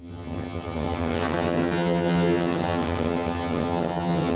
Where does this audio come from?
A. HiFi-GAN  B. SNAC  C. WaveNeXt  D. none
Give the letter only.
A